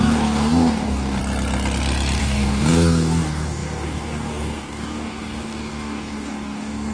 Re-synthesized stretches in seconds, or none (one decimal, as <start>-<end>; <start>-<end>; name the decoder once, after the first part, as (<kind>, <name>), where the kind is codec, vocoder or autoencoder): 0.0-1.2 (codec, DAC); 2.2-6.9